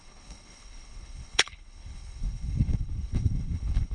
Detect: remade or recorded remade